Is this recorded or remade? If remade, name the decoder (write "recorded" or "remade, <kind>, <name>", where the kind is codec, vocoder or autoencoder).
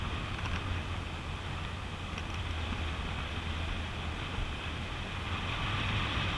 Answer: recorded